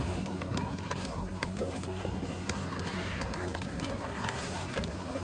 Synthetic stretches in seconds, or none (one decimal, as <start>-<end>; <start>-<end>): 0.0-5.2